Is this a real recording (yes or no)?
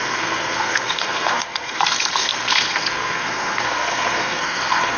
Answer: no